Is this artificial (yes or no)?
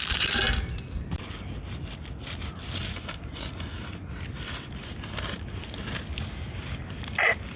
no